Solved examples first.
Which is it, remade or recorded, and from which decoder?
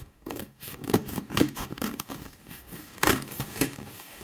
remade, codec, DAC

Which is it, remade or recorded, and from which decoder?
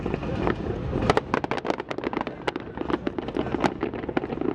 recorded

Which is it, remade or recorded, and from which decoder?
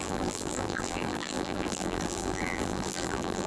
remade, vocoder, BigVGAN v2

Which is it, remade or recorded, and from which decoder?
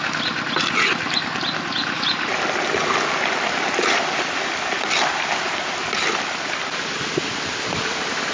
recorded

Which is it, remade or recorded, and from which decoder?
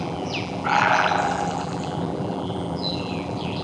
remade, vocoder, BigVGAN v2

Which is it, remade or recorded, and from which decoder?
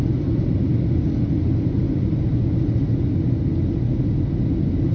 recorded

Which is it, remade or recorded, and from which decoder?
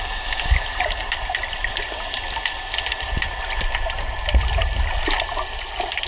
recorded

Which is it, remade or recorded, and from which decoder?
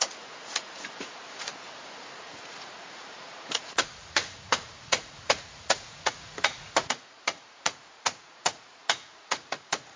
remade, vocoder, Vocos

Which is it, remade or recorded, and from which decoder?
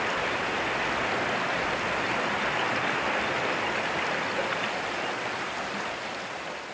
recorded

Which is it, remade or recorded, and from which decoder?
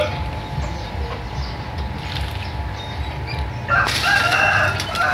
recorded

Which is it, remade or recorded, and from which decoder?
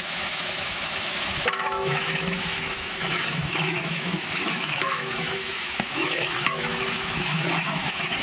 remade, autoencoder, DAC-VAE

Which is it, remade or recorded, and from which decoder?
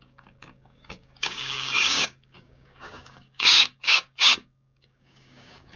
remade, codec, DAC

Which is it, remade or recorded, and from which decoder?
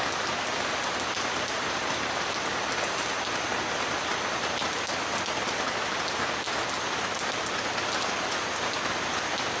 recorded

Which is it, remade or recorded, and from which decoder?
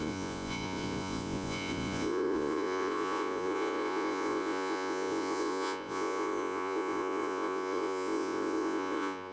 remade, vocoder, Vocos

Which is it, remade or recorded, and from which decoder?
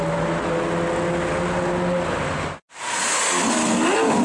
recorded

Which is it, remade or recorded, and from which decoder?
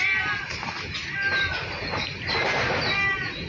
recorded